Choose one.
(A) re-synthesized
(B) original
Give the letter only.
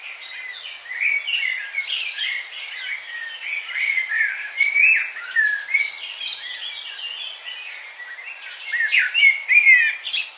B